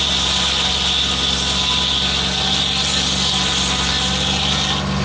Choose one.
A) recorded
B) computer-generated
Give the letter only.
A